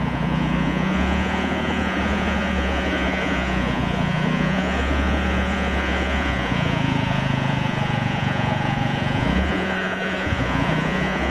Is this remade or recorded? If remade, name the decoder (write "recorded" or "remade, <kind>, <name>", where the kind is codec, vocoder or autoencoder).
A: remade, vocoder, Vocos